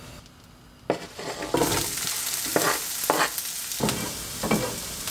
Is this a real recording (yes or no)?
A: yes